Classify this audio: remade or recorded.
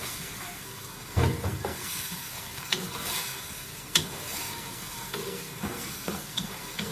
remade